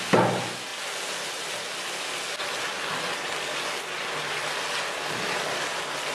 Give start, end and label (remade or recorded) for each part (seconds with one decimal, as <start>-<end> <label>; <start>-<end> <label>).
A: 0.0-6.1 recorded